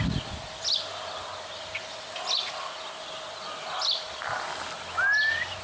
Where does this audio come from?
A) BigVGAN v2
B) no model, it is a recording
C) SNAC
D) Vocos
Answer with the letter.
B